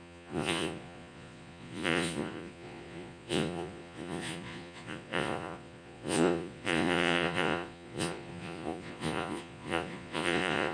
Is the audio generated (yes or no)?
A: yes